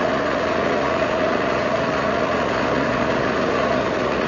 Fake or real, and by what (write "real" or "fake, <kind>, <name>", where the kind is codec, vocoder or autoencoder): fake, vocoder, Vocos